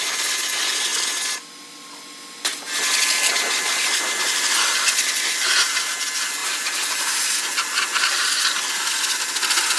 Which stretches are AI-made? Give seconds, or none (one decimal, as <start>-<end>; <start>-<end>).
6.4-8.3